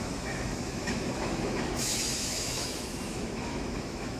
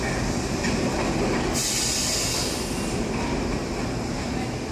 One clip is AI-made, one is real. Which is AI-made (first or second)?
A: first